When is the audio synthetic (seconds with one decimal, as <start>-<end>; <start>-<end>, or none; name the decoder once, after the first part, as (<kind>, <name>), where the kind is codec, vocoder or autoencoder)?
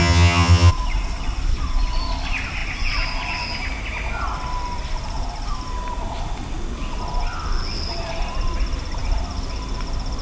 0.0-0.7 (vocoder, HiFi-GAN)